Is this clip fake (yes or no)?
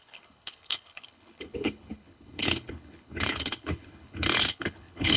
yes